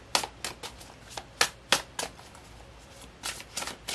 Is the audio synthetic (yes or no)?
no